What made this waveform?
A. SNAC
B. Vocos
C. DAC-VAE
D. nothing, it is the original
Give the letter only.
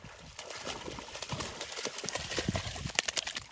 D